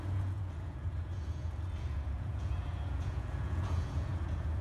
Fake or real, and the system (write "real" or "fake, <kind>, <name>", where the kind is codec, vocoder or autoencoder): fake, vocoder, Vocos